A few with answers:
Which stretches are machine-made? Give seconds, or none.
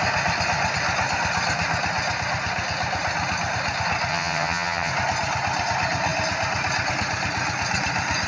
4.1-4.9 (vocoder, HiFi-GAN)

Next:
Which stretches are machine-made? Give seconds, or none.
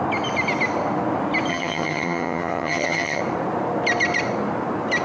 1.5-3.2 (vocoder, HiFi-GAN)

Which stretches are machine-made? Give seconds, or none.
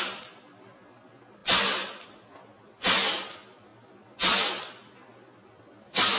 none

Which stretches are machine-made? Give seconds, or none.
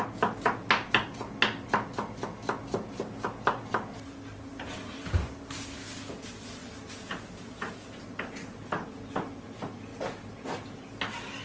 none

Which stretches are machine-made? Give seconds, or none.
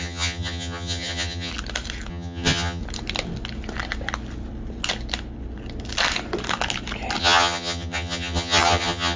0.0-1.5 (vocoder, HiFi-GAN); 2.1-2.8; 7.2-9.2